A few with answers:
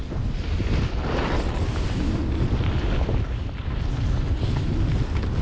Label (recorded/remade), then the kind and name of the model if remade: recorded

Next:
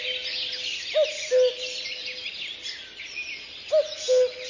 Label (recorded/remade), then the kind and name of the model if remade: recorded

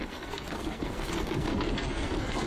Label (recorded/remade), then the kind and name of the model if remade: remade, codec, SNAC